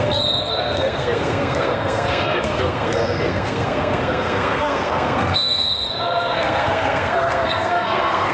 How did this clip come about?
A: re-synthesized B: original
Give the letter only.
A